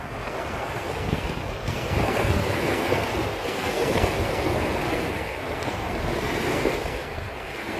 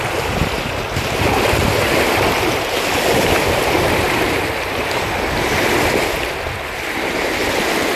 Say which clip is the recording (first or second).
second